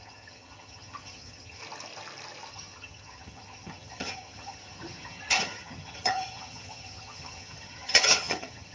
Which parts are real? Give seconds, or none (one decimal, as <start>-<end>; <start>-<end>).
1.6-2.5